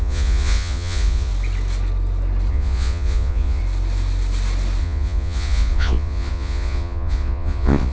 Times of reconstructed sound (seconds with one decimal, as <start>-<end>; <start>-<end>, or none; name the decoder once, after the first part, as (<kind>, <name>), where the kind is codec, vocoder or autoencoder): 0.0-1.3 (vocoder, Vocos); 2.5-3.6; 4.8-7.9